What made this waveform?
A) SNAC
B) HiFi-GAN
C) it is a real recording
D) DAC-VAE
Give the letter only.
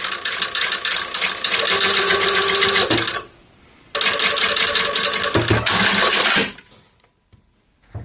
C